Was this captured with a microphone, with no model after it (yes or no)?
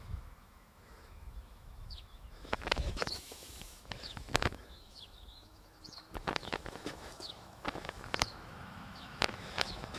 no